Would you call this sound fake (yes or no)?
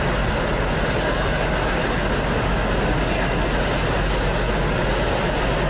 no